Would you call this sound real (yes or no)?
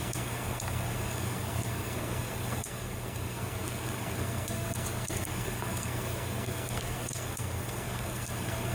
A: no